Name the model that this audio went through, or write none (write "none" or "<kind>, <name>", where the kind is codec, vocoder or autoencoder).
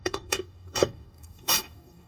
codec, DAC